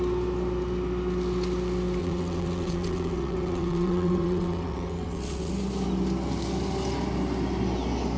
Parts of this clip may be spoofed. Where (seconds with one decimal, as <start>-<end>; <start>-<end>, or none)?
2.0-5.5